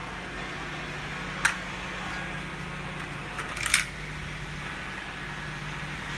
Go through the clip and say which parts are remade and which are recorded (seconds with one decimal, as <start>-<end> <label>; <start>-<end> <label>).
0.0-6.2 recorded